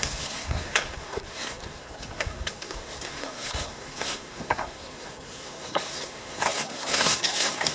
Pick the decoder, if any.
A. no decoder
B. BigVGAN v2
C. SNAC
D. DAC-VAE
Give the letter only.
C